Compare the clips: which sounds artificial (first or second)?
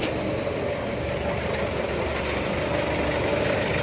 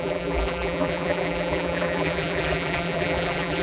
second